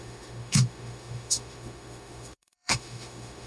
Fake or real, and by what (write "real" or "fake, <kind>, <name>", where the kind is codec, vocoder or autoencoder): fake, autoencoder, DAC-VAE